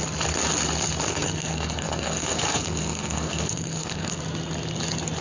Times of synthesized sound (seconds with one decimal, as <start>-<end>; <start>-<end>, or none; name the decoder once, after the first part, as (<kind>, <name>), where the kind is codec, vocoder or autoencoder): 1.1-4.2 (codec, SNAC)